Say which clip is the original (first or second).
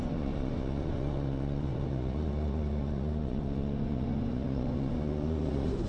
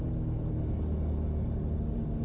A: second